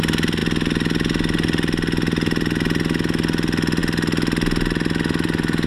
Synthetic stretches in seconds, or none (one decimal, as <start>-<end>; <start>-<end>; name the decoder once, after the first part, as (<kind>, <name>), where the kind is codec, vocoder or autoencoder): none